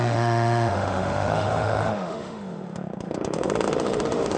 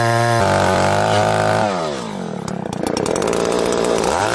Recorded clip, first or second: second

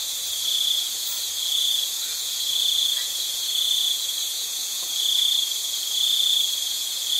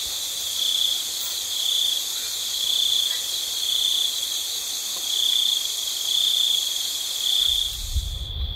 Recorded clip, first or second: second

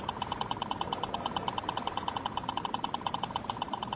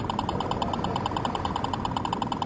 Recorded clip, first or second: second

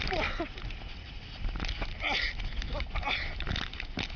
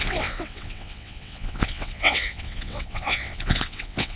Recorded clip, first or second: first